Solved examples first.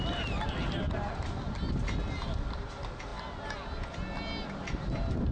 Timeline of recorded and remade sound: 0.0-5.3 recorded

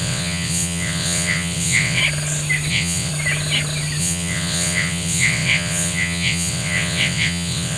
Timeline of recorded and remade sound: 0.0-2.0 remade; 2.0-2.7 recorded; 2.7-3.1 remade; 3.1-4.0 recorded; 4.0-7.8 remade

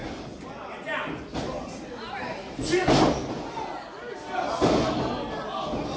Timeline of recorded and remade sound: 0.0-6.0 recorded

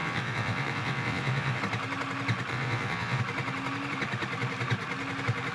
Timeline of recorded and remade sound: 0.0-1.6 remade; 1.6-2.5 recorded; 2.5-3.2 remade; 3.2-5.5 recorded

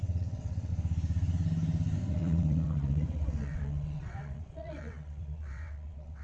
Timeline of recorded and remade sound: 0.0-0.7 remade; 0.7-2.1 recorded; 2.1-6.2 remade

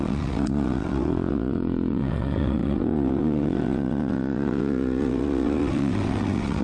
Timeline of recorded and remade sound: 0.0-6.6 remade

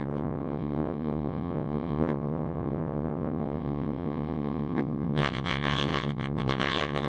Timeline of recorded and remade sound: 0.0-7.1 remade

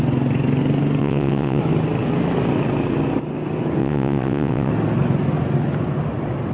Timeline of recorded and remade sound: 0.0-1.0 recorded; 1.0-1.6 remade; 1.6-3.8 recorded; 3.8-4.7 remade; 4.7-6.5 recorded